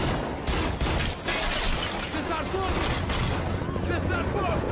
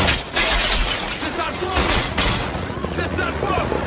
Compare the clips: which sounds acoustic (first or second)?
first